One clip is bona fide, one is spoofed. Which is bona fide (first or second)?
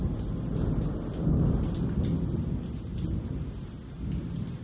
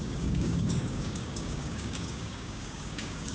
first